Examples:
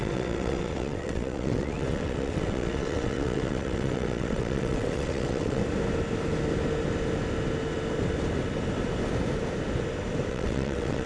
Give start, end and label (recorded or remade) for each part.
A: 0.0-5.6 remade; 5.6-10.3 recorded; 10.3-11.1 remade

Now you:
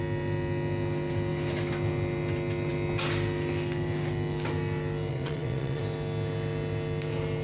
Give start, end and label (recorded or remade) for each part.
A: 0.0-5.1 recorded; 5.1-5.8 remade; 5.8-7.4 recorded

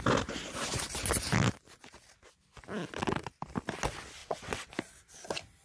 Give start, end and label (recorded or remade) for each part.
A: 0.0-4.2 recorded; 4.2-4.7 remade; 4.7-5.6 recorded

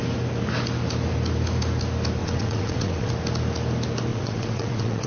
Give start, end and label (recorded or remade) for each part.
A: 0.0-2.2 recorded; 2.2-3.1 remade; 3.1-4.1 recorded; 4.1-5.1 remade